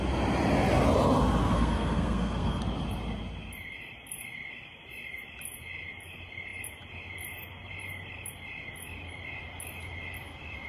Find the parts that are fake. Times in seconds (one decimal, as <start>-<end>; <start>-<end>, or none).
1.4-2.6